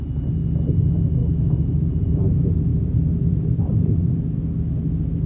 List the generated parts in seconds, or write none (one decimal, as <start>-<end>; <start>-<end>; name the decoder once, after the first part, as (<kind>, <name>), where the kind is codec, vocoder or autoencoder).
1.2-2.3 (vocoder, Vocos); 2.7-4.4